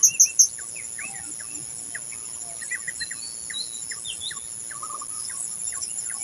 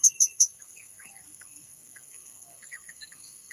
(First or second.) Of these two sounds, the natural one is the first